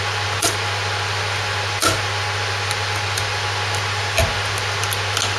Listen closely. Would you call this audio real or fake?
real